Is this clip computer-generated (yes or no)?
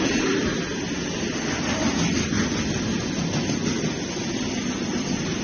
no